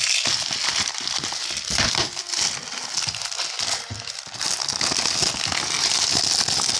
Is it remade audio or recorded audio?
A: recorded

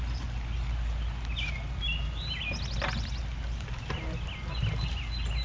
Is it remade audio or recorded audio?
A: recorded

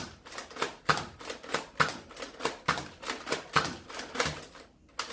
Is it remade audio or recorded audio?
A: recorded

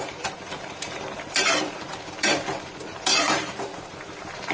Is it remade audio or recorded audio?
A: remade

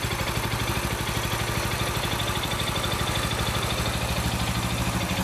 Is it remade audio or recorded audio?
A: recorded